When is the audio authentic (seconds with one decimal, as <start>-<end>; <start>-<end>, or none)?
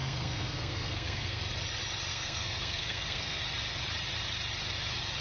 1.4-2.1; 3.4-5.2